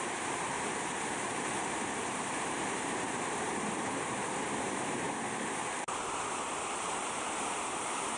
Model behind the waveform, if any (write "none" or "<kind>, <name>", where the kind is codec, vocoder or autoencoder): vocoder, BigVGAN v2